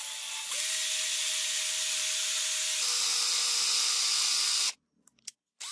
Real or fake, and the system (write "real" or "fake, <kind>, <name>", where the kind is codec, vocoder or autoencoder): real